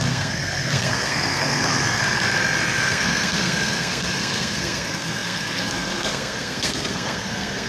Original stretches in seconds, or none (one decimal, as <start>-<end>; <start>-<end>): 2.0-2.8